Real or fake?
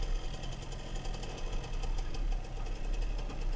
real